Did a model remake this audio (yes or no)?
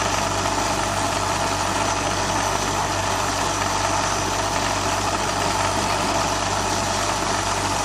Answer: no